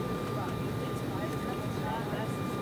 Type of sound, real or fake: real